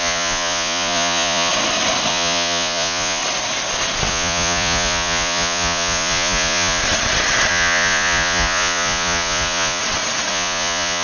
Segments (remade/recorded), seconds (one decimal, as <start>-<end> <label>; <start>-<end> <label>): 0.0-1.5 remade; 1.5-2.1 recorded; 2.1-3.2 remade; 3.2-4.1 recorded; 4.1-6.8 remade; 6.8-7.5 recorded; 7.5-9.8 remade; 9.8-10.3 recorded; 10.3-11.0 remade